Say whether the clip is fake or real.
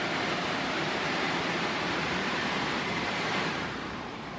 fake